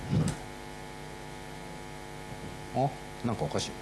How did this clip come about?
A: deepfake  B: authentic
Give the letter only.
B